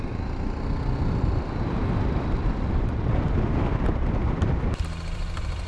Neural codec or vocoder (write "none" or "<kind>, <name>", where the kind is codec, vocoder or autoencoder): vocoder, BigVGAN v2